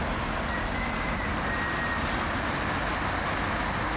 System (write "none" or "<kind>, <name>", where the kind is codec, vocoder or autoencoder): none